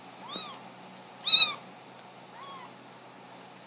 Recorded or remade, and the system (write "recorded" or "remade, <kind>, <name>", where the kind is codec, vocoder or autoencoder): recorded